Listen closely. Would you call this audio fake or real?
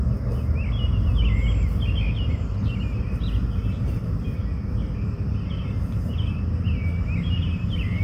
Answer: real